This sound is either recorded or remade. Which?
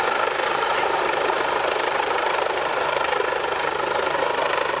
remade